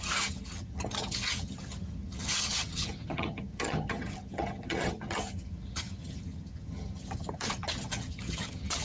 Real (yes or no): no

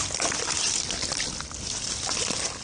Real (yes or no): yes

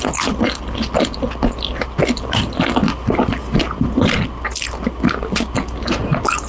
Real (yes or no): yes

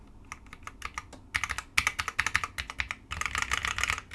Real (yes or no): yes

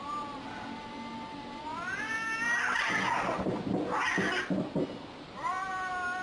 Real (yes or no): yes